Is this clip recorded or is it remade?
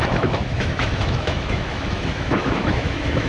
remade